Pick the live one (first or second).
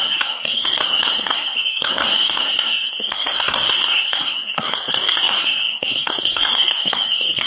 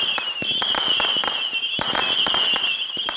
second